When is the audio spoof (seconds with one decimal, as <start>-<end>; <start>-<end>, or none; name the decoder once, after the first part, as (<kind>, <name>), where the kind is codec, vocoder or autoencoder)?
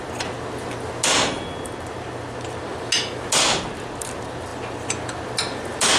none